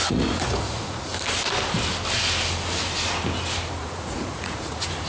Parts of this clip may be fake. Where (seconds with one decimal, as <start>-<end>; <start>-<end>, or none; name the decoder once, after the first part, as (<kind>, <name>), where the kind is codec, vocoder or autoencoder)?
0.0-1.1 (vocoder, Vocos); 3.8-5.1